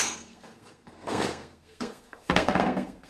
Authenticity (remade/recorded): remade